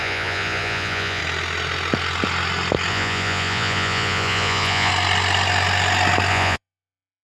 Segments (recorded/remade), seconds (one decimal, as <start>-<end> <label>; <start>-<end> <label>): 0.0-1.2 remade; 1.2-2.9 recorded; 2.9-4.9 remade; 4.9-6.3 recorded; 6.3-7.2 remade